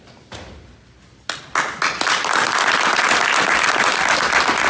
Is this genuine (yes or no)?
yes